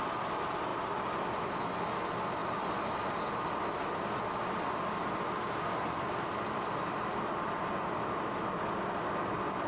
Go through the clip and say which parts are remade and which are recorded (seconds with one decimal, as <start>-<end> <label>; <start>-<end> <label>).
0.0-9.7 recorded

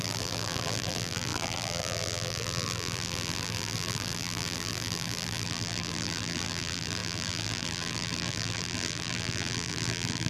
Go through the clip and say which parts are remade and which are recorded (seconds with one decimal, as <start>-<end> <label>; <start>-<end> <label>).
0.0-10.3 remade

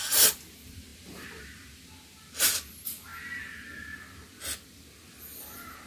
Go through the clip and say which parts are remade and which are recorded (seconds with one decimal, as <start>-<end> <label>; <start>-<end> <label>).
0.0-5.9 recorded

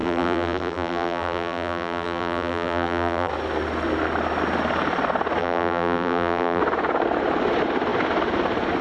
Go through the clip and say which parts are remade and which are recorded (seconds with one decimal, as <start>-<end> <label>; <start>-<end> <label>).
0.0-3.3 remade; 3.3-5.4 recorded; 5.4-6.6 remade; 6.6-8.8 recorded

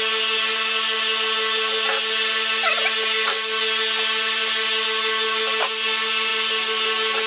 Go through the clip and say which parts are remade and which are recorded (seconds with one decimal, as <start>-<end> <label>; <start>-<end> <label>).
0.0-7.3 recorded

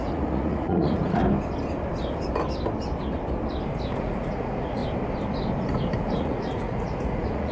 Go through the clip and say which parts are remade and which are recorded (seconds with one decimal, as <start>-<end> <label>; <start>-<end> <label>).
0.0-1.2 remade; 1.2-3.9 recorded; 3.9-4.8 remade; 4.8-6.0 recorded; 6.0-7.5 remade

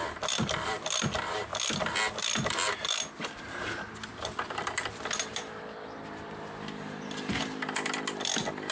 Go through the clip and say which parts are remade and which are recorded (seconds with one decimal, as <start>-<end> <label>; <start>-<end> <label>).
0.0-8.7 recorded

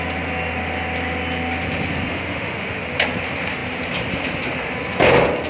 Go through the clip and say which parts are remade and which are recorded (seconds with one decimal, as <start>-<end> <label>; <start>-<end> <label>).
0.0-2.1 recorded; 2.1-2.8 remade; 2.8-5.5 recorded